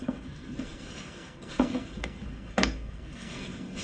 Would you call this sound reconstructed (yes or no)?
yes